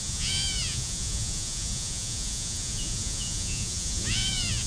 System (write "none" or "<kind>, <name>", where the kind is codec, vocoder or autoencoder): vocoder, Vocos